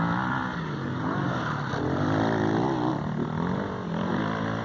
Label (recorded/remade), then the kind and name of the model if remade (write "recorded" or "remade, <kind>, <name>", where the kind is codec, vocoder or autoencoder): recorded